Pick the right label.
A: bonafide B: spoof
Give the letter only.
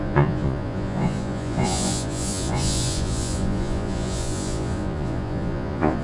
B